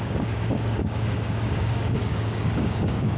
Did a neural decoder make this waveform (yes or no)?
yes